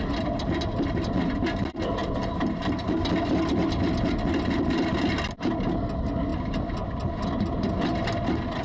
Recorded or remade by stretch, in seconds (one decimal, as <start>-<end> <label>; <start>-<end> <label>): 0.0-8.6 recorded